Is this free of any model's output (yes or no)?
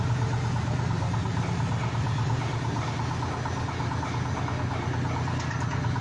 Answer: yes